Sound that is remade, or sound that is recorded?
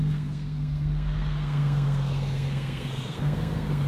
remade